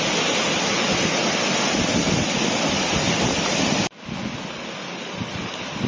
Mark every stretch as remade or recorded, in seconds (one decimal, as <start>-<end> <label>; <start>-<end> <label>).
0.0-5.9 recorded